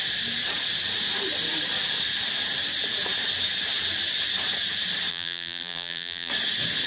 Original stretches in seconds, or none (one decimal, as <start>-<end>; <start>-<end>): 0.0-5.1; 6.3-6.9